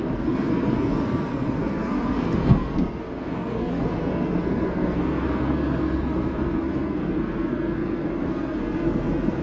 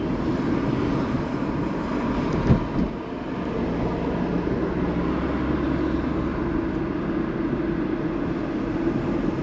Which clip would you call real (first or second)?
second